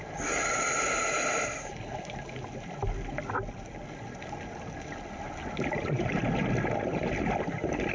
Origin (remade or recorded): recorded